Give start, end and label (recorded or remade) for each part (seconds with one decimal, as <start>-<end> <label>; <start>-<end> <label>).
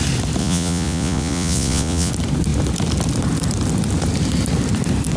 0.0-0.4 recorded; 0.4-2.1 remade; 2.1-5.2 recorded